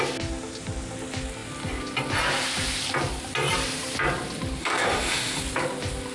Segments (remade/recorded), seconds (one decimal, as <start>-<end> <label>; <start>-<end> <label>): 0.0-4.6 recorded; 4.6-5.4 remade; 5.4-6.1 recorded